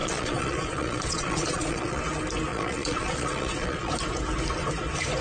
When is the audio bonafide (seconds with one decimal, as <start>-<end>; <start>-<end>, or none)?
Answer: 2.0-2.5; 3.9-5.2

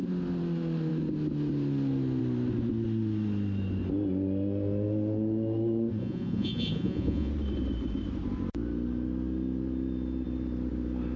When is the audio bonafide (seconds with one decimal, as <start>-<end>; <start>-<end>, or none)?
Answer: 0.0-6.0; 7.3-11.2

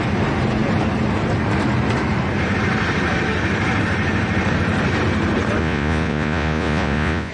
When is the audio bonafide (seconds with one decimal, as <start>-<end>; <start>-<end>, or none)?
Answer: 0.0-5.6

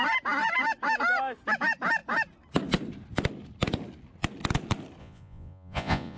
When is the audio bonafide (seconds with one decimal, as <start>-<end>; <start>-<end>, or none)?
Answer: 0.0-5.0

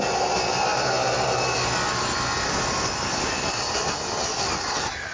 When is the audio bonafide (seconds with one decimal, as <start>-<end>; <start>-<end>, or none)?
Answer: 0.0-5.1

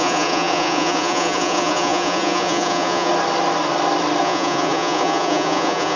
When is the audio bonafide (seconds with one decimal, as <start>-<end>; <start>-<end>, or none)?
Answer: 3.1-4.2

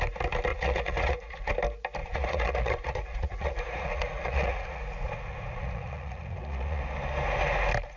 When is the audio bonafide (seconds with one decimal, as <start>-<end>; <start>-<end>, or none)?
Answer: 0.0-0.5; 1.5-2.0; 6.8-8.0